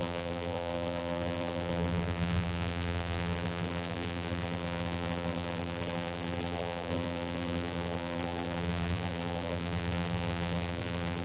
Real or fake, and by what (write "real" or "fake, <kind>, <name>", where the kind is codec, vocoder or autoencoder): fake, vocoder, BigVGAN v2